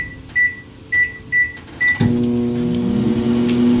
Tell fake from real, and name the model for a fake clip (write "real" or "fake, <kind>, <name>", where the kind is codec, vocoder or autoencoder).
real